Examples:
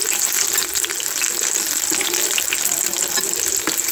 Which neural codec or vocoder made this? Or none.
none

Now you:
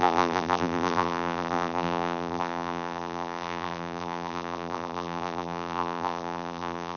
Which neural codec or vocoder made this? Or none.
vocoder, BigVGAN v2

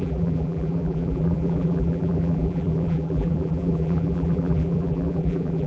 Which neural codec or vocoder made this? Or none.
vocoder, BigVGAN v2